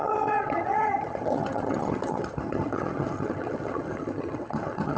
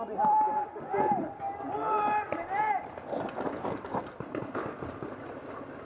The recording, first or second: second